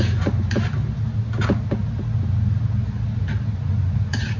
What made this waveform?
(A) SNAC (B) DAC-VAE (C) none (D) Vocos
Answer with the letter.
C